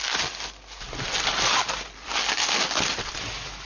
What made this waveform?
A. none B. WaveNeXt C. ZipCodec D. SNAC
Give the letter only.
A